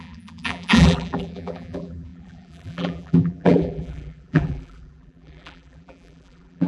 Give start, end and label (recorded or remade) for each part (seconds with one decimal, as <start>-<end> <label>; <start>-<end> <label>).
0.0-6.7 remade